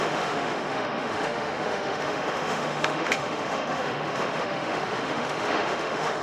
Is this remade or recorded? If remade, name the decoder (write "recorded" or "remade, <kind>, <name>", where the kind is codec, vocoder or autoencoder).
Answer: remade, autoencoder, DAC-VAE